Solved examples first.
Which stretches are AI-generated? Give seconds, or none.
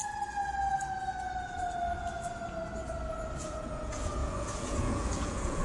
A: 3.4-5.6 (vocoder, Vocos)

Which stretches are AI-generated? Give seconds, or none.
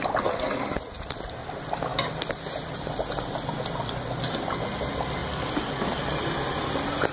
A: none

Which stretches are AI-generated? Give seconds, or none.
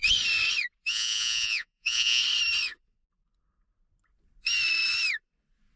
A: 0.9-2.2 (vocoder, Vocos)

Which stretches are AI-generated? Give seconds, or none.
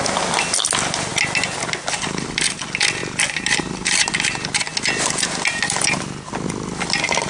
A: none